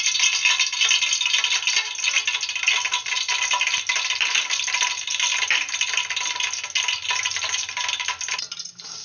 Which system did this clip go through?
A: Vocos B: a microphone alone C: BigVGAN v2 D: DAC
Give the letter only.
B